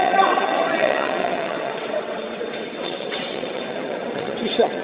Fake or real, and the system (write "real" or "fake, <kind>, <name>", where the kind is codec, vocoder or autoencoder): fake, vocoder, WaveNeXt